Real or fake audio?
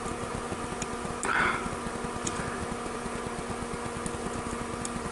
real